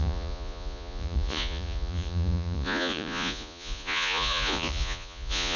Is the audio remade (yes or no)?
yes